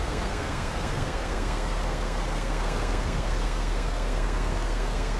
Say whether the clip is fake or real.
fake